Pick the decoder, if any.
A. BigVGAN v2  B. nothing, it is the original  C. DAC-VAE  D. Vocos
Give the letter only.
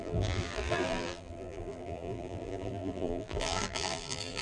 A